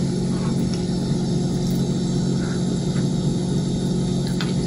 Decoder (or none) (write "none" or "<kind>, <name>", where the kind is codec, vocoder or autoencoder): none